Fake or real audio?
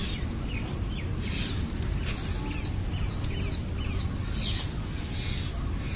real